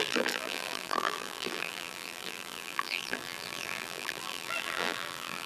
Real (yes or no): no